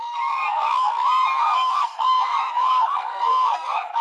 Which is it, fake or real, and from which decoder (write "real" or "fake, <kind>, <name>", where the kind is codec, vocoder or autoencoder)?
fake, codec, SNAC